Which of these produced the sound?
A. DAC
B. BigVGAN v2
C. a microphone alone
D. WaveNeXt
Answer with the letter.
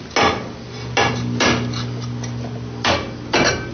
C